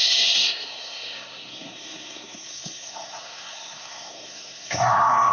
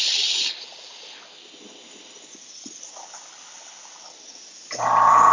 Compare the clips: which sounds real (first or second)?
second